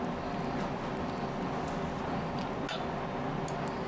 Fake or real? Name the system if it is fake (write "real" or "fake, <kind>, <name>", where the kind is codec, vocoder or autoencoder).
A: real